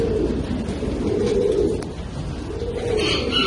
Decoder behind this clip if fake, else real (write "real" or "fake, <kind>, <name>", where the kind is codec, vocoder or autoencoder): real